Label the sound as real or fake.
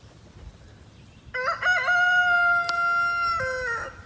real